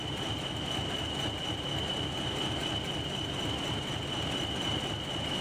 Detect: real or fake real